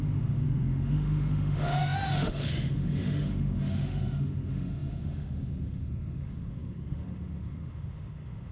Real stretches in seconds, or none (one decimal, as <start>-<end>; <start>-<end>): none